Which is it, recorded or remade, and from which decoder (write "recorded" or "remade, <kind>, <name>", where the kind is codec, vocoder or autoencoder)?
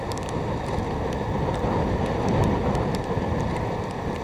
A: recorded